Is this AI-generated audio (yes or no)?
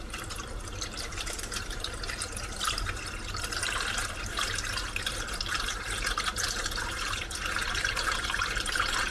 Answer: yes